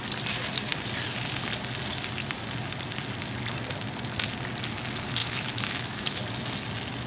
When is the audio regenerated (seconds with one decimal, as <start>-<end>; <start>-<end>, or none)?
5.2-6.2